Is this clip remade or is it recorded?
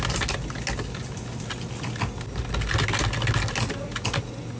recorded